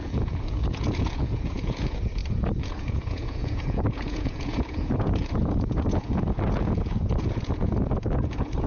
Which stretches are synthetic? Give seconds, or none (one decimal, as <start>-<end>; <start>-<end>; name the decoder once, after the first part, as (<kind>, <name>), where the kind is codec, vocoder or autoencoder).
0.0-8.7 (vocoder, Vocos)